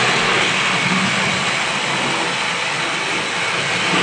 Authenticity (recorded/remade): recorded